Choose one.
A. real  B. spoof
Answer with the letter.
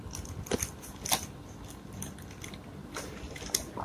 A